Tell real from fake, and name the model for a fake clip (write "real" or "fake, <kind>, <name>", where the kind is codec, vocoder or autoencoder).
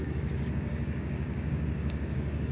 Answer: fake, codec, DAC